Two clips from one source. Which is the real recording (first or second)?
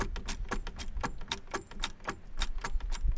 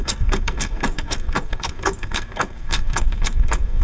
first